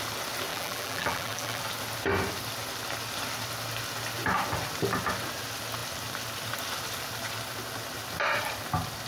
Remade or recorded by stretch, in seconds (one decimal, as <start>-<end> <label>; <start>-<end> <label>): 0.0-0.5 recorded; 0.5-1.6 remade; 1.6-9.1 recorded